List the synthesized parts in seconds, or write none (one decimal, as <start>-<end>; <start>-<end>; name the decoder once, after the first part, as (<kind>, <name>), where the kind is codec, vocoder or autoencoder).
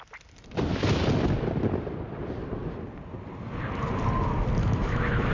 4.6-5.3 (autoencoder, DAC-VAE)